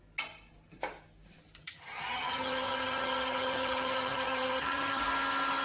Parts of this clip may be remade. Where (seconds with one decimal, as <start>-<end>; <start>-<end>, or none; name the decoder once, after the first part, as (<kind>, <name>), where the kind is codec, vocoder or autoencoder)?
1.6-5.0 (vocoder, HiFi-GAN)